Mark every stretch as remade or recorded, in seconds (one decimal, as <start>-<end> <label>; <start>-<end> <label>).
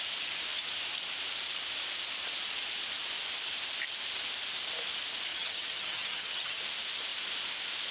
0.0-5.3 recorded; 5.3-6.6 remade; 6.6-7.9 recorded